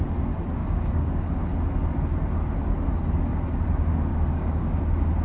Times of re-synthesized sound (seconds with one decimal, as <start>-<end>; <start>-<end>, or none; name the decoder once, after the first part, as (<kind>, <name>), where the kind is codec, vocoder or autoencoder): 0.6-1.4 (codec, DAC); 4.1-4.8